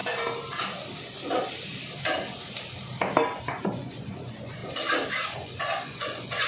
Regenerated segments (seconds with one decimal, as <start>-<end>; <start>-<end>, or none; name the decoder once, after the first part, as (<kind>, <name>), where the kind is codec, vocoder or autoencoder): 3.4-4.6 (vocoder, Vocos); 5.1-6.5